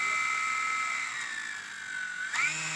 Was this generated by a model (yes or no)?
no